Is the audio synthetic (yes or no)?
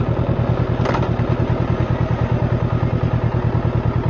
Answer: no